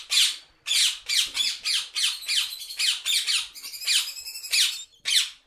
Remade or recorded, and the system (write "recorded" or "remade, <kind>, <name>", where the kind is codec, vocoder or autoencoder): recorded